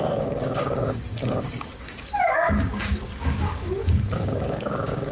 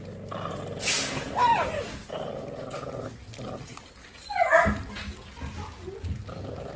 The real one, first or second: second